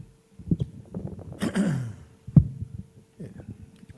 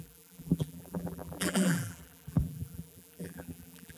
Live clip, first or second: first